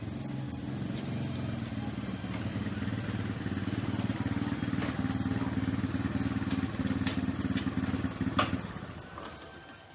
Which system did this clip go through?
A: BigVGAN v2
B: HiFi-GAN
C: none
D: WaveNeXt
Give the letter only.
C